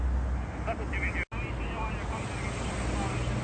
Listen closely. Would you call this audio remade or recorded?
recorded